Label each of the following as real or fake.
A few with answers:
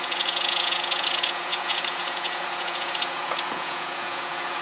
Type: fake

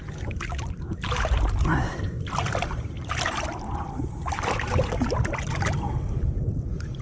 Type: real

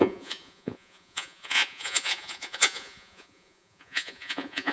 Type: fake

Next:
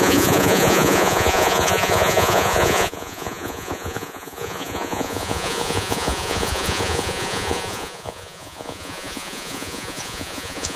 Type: fake